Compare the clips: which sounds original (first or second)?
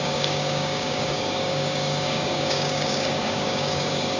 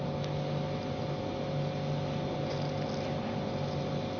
second